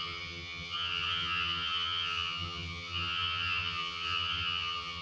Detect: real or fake fake